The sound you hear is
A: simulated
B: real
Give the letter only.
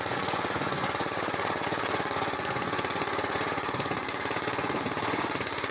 A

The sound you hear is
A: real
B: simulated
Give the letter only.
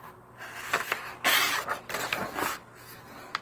A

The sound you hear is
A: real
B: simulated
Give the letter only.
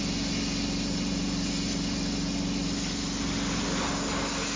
A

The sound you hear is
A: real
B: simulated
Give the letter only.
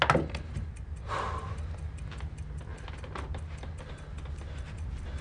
A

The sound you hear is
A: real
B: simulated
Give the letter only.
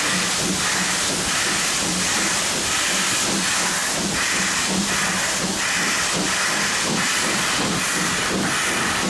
A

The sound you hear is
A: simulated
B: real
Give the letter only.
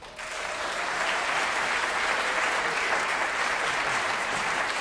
A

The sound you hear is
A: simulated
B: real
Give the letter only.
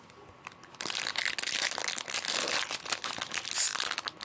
B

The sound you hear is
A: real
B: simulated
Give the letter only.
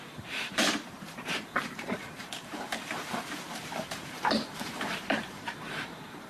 B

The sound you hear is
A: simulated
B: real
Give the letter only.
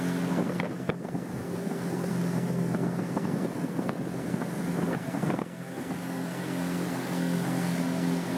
A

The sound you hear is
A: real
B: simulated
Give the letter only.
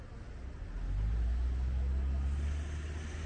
A